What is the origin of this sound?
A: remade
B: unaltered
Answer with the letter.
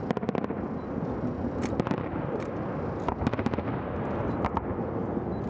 B